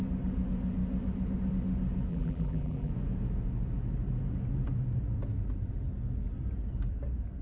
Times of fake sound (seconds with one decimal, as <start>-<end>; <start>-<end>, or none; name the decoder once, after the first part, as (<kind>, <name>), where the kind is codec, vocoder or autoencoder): 2.1-2.9 (vocoder, BigVGAN v2)